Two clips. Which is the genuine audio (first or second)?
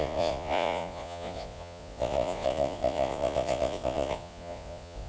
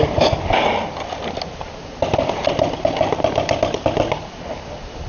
second